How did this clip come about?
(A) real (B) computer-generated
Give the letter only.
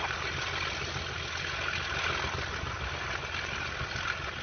A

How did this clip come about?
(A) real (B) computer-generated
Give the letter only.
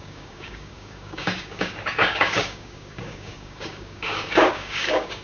B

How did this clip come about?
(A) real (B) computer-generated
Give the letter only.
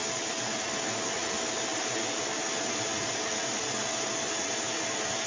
A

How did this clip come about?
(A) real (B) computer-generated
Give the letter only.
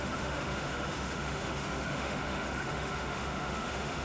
B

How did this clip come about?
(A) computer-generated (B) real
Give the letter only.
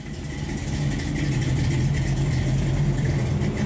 B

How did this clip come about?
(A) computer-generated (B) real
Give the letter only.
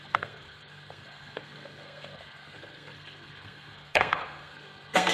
A